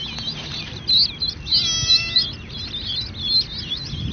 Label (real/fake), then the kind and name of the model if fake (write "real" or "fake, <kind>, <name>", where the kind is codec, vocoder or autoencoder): real